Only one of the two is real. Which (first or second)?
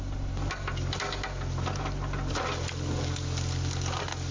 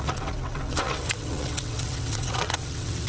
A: first